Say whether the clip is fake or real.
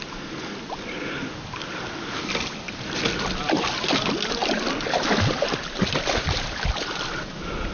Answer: real